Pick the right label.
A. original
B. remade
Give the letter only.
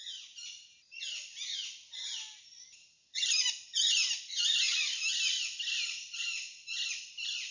A